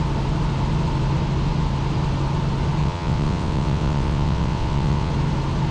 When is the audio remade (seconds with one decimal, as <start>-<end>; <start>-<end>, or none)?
2.8-5.1